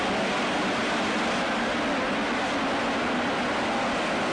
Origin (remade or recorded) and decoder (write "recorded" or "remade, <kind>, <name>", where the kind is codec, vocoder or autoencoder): recorded